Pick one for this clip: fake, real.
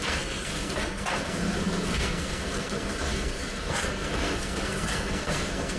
fake